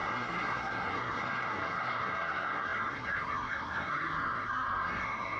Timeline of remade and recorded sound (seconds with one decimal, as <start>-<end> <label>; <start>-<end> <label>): 0.0-5.4 remade